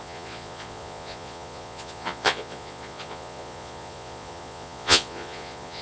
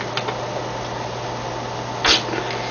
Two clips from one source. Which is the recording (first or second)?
second